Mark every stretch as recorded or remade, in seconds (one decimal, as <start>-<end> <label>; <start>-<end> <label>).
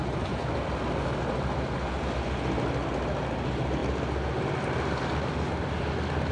0.0-6.3 recorded